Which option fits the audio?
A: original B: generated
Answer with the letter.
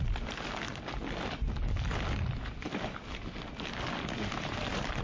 A